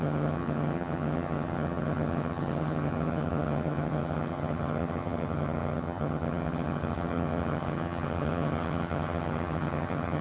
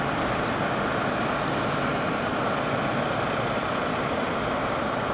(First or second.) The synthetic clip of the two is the first